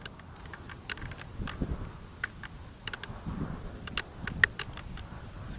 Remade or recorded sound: recorded